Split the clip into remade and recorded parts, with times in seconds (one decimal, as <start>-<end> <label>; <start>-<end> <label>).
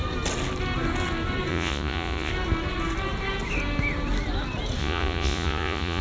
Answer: 0.0-1.5 recorded; 1.5-2.3 remade; 2.3-4.8 recorded; 4.8-6.0 remade